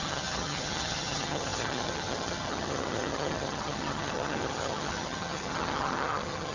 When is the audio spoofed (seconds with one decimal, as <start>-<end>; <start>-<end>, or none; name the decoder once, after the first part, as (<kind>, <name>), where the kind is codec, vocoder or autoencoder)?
0.0-6.5 (vocoder, HiFi-GAN)